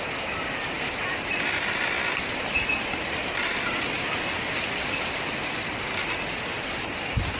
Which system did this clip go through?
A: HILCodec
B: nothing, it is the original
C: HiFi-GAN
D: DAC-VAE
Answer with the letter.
B